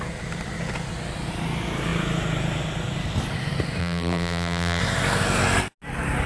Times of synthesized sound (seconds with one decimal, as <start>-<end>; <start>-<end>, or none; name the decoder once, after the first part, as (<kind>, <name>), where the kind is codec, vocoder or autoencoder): 3.8-4.8 (vocoder, BigVGAN v2)